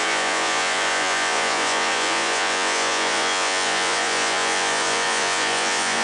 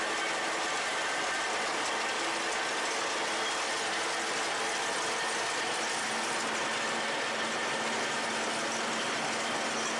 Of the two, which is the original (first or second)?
second